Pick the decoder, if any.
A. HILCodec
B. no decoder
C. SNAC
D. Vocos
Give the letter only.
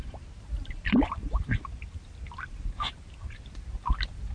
B